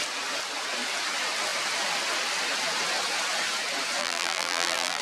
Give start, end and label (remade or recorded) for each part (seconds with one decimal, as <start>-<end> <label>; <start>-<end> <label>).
0.0-4.0 recorded; 4.0-5.0 remade